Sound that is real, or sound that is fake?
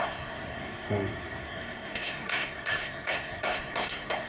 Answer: fake